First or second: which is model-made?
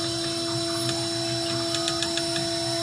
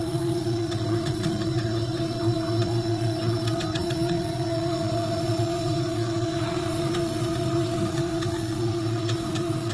second